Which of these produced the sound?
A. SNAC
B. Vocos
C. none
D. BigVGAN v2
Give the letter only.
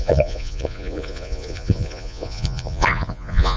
B